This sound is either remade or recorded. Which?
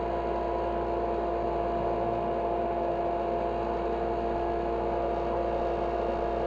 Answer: recorded